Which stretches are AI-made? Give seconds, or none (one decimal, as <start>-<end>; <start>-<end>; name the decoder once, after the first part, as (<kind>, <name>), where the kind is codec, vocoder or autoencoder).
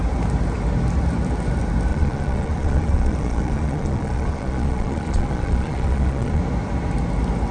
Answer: 1.9-6.4 (vocoder, Vocos)